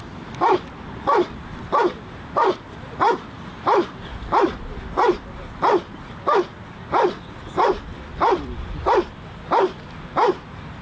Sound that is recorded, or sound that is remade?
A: remade